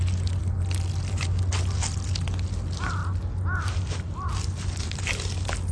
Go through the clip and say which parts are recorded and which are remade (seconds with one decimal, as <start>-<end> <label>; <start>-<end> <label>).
0.0-5.7 recorded